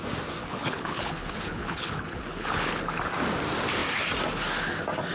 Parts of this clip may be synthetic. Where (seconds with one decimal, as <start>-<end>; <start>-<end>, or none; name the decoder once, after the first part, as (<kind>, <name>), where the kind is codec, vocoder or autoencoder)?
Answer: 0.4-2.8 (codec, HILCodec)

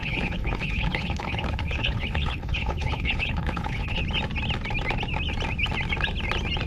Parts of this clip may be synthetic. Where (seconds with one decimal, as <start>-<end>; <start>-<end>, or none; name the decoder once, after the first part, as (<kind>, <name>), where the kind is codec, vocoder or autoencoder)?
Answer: 0.0-4.0 (codec, HILCodec)

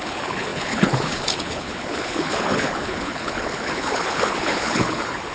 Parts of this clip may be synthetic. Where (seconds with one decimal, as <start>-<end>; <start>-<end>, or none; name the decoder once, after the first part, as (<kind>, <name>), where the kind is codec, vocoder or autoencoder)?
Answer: 0.0-5.3 (codec, HILCodec)

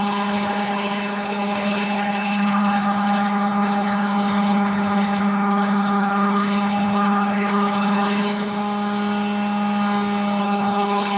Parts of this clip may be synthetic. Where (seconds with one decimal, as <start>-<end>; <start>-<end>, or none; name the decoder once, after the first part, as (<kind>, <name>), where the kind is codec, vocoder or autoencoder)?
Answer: 0.0-8.6 (codec, HILCodec); 10.4-11.2

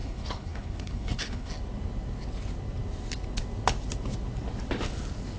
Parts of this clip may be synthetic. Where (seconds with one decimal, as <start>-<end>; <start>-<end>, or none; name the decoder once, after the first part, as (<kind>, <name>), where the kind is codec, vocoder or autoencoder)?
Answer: 0.0-1.5 (codec, HILCodec)

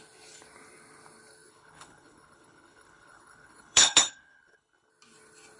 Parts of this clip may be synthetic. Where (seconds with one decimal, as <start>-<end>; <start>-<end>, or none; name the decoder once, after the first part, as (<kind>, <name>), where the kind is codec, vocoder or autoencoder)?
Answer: 1.5-4.9 (codec, HILCodec)